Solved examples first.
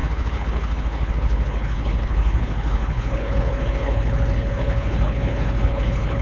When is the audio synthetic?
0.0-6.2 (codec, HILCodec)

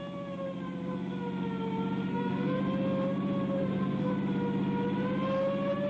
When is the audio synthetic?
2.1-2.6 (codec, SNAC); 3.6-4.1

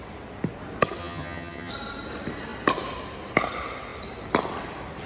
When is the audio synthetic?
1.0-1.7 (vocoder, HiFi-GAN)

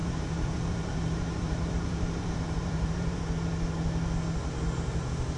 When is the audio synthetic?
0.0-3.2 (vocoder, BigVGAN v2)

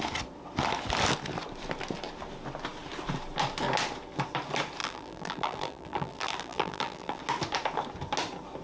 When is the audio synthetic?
4.8-7.2 (vocoder, BigVGAN v2)

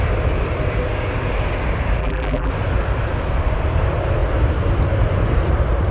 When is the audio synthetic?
2.0-2.5 (vocoder, BigVGAN v2)